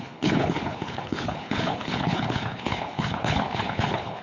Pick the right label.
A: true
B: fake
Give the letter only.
B